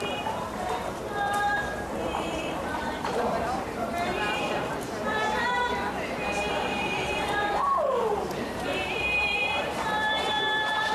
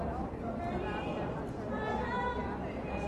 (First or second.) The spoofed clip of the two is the first